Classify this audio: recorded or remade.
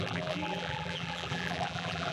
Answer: remade